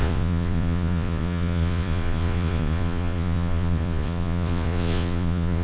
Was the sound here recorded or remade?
remade